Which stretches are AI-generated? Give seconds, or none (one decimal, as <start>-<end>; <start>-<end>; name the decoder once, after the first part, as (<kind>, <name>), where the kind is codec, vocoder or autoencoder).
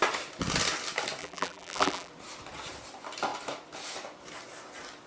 1.2-2.1 (vocoder, BigVGAN v2)